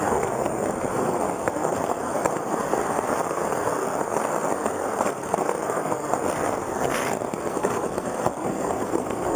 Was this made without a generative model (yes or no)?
no